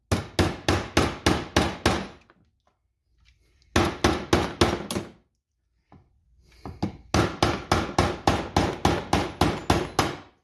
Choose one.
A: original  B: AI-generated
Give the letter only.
A